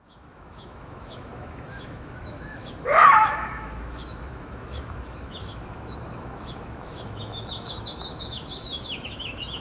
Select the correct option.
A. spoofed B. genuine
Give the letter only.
A